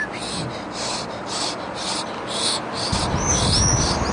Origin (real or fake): real